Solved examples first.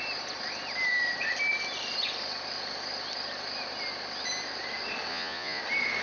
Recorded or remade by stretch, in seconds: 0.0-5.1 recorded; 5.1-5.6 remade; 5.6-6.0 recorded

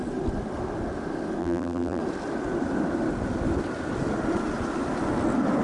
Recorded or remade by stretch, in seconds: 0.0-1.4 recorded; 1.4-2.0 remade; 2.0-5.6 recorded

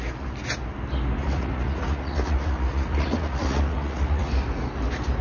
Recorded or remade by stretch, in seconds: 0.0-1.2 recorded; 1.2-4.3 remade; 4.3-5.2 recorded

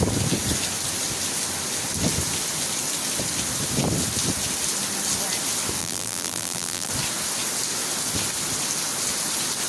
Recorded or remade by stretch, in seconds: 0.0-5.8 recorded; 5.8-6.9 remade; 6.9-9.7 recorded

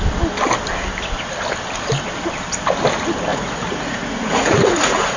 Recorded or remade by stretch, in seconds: 0.0-3.3 recorded; 3.3-5.2 remade